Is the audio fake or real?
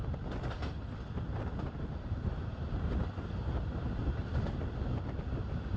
real